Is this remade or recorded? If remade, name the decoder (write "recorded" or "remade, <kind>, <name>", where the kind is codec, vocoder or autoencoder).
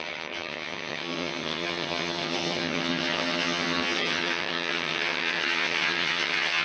remade, vocoder, HiFi-GAN